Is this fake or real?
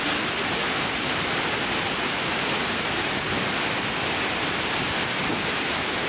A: real